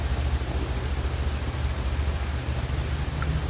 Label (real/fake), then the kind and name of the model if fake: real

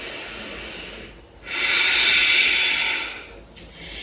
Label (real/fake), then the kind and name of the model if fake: real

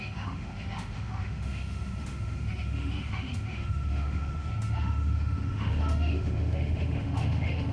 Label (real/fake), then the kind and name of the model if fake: fake, autoencoder, DAC-VAE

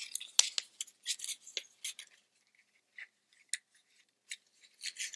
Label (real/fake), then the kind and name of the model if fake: real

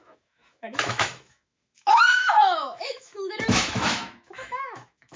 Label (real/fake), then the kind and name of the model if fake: fake, autoencoder, DAC-VAE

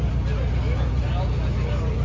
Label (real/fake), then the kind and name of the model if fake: real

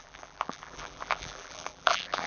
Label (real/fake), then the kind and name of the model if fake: fake, vocoder, BigVGAN v2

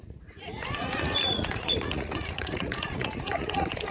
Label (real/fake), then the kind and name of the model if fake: fake, vocoder, Vocos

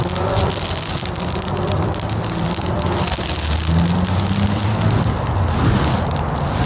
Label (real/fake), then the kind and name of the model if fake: real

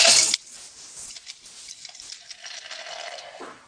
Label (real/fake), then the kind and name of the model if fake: real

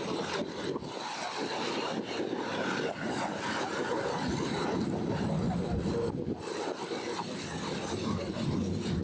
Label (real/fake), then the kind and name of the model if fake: real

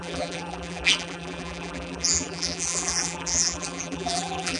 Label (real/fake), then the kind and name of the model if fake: fake, vocoder, BigVGAN v2